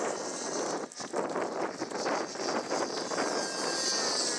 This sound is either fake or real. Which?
real